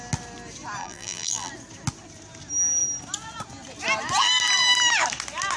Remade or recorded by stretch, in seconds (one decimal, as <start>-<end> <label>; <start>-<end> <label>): 0.0-0.8 recorded; 0.8-1.5 remade; 1.5-5.6 recorded